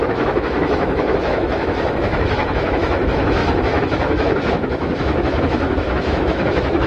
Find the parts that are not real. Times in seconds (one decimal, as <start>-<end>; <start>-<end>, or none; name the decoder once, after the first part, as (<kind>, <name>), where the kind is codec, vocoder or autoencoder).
0.0-6.9 (autoencoder, DAC-VAE)